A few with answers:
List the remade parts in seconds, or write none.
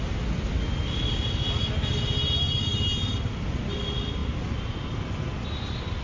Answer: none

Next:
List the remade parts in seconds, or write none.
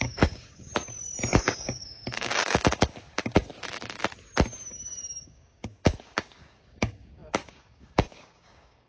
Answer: 0.0-0.7 (codec, DAC); 1.3-3.5; 5.2-8.9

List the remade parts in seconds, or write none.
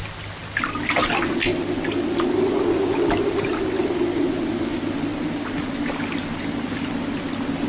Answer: none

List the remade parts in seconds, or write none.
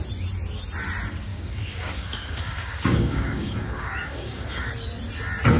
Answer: 1.3-4.7 (codec, DAC)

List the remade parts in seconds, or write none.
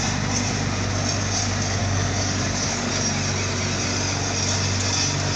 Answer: 1.8-2.9 (codec, DAC)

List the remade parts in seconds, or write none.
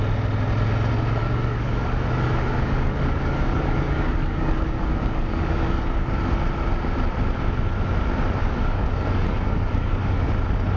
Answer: 1.2-6.1 (codec, DAC); 8.4-10.3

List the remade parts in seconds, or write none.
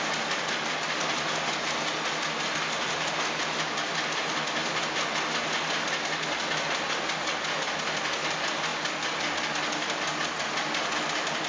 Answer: none